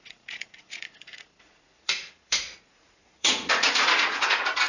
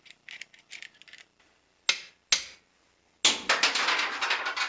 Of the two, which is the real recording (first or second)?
second